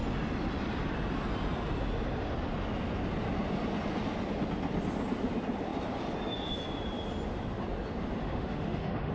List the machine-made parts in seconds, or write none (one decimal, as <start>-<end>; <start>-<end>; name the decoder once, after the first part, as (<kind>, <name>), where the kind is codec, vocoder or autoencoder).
8.2-9.1 (autoencoder, DAC-VAE)